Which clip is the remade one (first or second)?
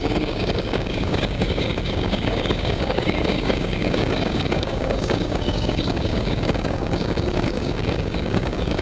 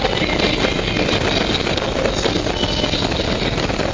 first